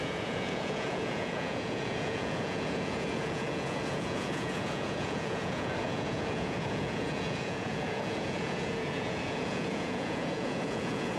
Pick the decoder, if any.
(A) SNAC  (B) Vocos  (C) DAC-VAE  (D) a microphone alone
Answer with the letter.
B